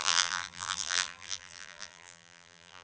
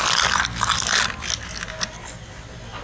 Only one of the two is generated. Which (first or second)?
first